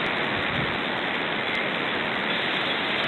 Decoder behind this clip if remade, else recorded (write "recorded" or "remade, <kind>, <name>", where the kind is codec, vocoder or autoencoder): recorded